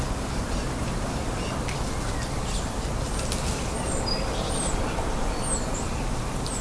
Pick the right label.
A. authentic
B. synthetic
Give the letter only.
A